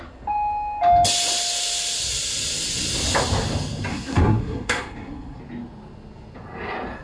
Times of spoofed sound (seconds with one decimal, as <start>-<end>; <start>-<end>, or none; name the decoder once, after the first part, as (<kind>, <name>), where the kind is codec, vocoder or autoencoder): 3.9-5.4 (codec, SNAC)